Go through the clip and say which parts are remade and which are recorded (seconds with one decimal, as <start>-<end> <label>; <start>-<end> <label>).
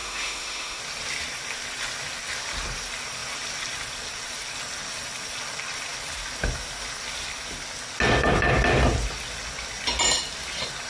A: 0.0-0.8 remade; 0.8-10.9 recorded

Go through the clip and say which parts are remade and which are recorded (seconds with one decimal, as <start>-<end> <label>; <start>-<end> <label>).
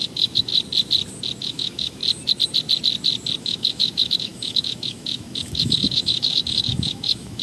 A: 0.0-0.5 remade; 0.5-1.4 recorded; 1.4-2.0 remade; 2.0-3.4 recorded; 3.4-7.4 remade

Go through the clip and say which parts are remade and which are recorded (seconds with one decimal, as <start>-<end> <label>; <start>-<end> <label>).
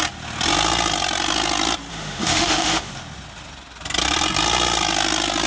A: 0.0-1.9 recorded; 1.9-2.9 remade; 2.9-5.5 recorded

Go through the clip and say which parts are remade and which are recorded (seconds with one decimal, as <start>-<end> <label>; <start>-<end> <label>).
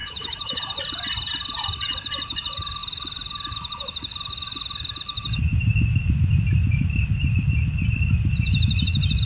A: 0.0-0.6 remade; 0.6-9.3 recorded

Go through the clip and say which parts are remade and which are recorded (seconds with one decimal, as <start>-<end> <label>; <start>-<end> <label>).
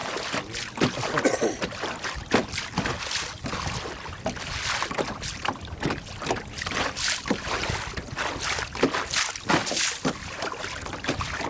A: 0.0-11.5 recorded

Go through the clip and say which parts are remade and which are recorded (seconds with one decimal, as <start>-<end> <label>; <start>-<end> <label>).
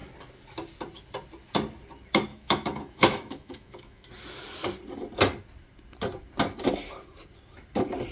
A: 0.0-2.3 recorded; 2.3-4.1 remade; 4.1-8.1 recorded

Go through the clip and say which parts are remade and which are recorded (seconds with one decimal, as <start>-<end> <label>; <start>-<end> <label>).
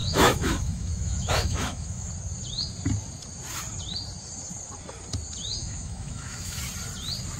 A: 0.0-2.1 remade; 2.1-5.6 recorded; 5.6-6.6 remade; 6.6-7.4 recorded